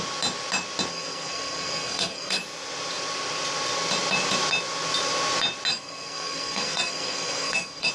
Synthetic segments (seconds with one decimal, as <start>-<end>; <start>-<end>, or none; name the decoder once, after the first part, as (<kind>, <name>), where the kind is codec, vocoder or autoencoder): 0.9-2.4 (codec, SNAC); 5.7-7.9